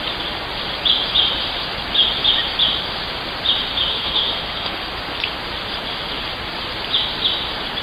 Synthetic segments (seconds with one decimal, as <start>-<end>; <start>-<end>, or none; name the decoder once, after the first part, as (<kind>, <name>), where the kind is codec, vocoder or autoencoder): 3.9-4.9 (codec, SNAC)